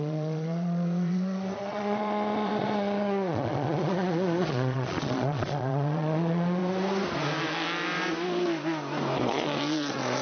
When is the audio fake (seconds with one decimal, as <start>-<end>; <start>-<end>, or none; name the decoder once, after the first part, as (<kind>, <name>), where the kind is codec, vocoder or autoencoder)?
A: 0.0-6.6 (vocoder, Vocos); 9.2-10.2